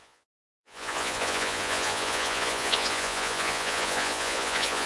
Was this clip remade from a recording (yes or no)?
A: yes